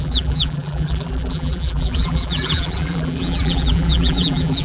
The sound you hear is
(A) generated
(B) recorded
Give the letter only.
A